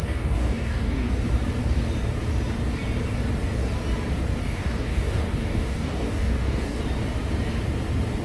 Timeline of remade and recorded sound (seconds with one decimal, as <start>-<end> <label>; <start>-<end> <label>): 0.0-1.1 remade; 1.1-4.4 recorded; 4.4-6.8 remade; 6.8-8.2 recorded